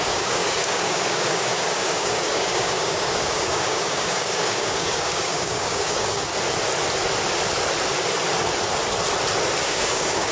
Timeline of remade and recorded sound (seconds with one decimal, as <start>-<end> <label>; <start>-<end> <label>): 0.0-6.3 remade; 6.3-9.6 recorded; 9.6-10.3 remade